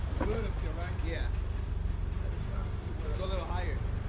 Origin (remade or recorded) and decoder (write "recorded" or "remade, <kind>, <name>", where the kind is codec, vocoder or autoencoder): remade, vocoder, BigVGAN v2